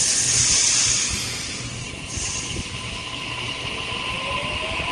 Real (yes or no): yes